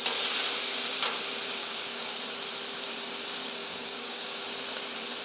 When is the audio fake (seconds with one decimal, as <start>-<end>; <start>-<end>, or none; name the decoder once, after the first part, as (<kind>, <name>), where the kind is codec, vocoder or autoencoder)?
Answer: 1.6-2.2 (codec, DAC); 3.6-4.4